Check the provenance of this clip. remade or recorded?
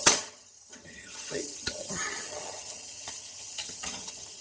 remade